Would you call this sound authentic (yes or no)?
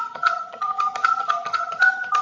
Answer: no